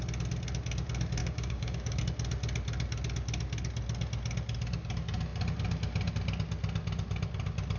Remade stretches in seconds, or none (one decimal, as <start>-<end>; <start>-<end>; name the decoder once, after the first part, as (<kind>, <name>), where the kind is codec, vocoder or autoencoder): 1.2-2.0 (codec, DAC)